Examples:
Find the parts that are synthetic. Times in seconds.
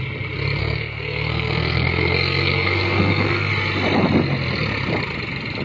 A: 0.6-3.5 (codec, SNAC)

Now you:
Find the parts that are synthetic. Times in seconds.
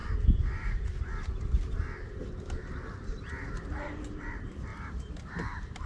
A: 3.5-5.9 (vocoder, BigVGAN v2)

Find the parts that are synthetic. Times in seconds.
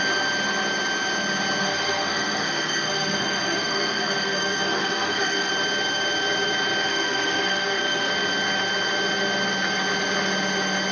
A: 1.6-5.5 (codec, SNAC); 6.9-8.1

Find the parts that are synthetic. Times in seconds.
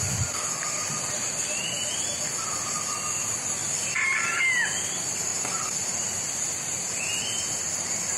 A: none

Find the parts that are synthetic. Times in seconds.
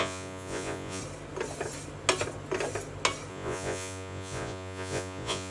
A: 0.0-1.0 (vocoder, Vocos); 3.3-5.5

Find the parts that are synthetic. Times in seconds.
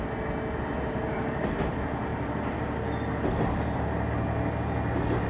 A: none